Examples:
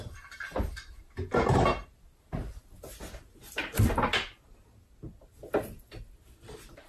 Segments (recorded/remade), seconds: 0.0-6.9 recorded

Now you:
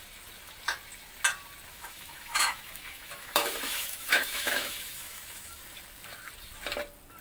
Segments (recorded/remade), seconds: 0.0-1.7 recorded; 1.7-5.6 remade; 5.6-7.2 recorded

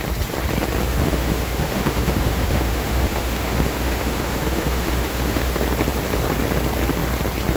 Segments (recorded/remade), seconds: 0.0-0.9 recorded; 0.9-5.5 remade; 5.5-7.6 recorded

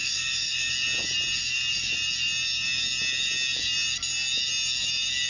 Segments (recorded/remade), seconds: 0.0-0.7 remade; 0.7-5.3 recorded